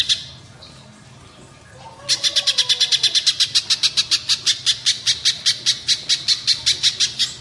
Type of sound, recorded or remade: recorded